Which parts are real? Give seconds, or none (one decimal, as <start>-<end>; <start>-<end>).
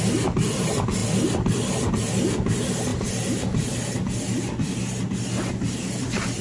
0.0-6.4